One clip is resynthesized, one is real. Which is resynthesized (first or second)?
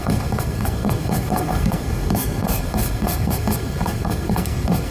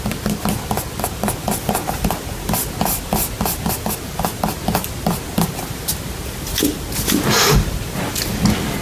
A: first